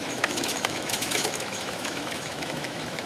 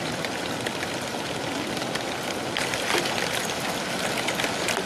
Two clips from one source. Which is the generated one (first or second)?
first